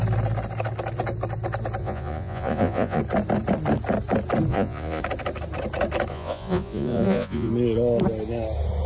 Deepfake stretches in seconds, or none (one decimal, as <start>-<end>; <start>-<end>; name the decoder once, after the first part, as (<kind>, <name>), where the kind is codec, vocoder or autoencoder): 1.8-3.0 (vocoder, Vocos); 4.5-5.0; 6.1-7.5